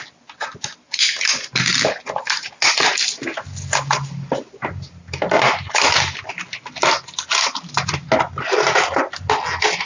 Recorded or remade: recorded